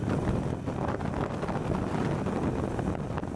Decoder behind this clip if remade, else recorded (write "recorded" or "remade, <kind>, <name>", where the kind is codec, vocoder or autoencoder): recorded